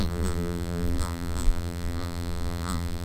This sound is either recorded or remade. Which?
remade